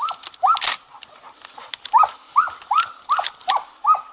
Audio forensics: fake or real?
real